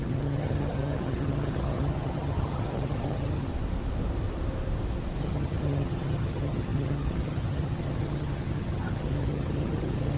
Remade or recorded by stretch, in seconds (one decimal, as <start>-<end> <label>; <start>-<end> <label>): 0.0-3.5 remade; 3.5-5.2 recorded; 5.2-10.2 remade